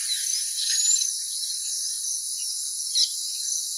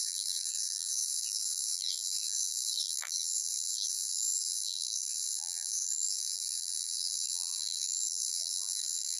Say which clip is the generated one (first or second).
second